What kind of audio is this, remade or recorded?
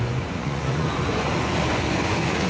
remade